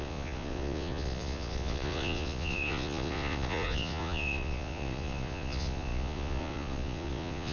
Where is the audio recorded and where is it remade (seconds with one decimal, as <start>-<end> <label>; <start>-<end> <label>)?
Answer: 0.0-7.5 remade